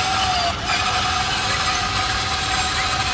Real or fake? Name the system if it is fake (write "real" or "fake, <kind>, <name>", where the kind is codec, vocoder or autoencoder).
real